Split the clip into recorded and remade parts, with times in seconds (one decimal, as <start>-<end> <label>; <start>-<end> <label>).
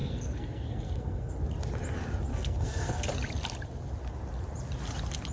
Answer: 0.0-1.3 remade; 1.3-2.3 recorded; 2.3-3.1 remade; 3.1-5.3 recorded